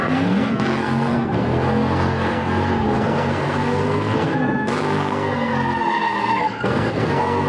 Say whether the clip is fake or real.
fake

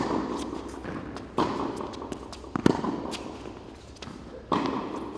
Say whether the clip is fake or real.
real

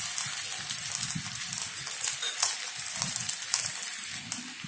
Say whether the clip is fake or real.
real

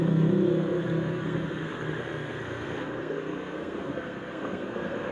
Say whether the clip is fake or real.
fake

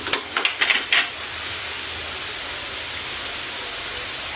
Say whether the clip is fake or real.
real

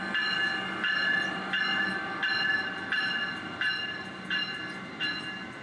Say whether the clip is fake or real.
real